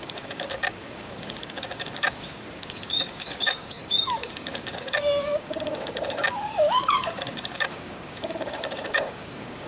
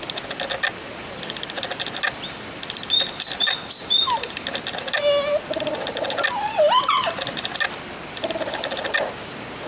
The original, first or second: second